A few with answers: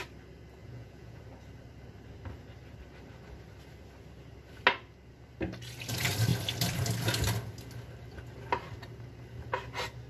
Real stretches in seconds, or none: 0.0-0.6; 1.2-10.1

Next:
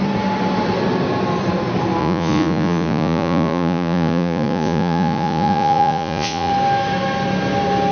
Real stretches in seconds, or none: 0.0-2.0; 6.5-7.9

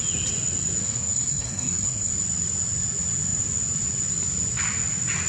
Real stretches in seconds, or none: 0.0-0.8; 2.1-5.3

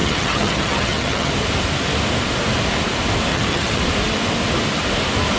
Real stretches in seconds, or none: 1.3-3.3; 3.8-5.4